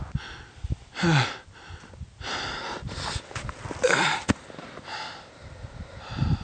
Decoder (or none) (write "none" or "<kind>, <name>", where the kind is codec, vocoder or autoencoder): none